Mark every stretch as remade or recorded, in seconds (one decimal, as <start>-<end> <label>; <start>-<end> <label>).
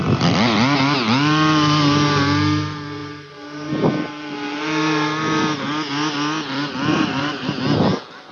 0.0-3.0 recorded; 3.0-3.7 remade; 3.7-6.9 recorded; 6.9-7.6 remade; 7.6-8.3 recorded